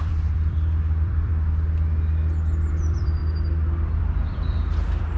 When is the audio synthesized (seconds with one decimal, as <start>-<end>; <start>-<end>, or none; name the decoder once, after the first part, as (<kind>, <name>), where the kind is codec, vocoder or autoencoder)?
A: 0.0-1.3 (vocoder, BigVGAN v2); 2.7-3.2; 4.0-5.2